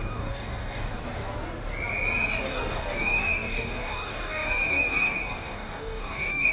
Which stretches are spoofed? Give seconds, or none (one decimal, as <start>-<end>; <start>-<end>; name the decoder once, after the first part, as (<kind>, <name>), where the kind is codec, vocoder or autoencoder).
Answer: 0.0-1.0 (codec, DAC); 2.4-6.5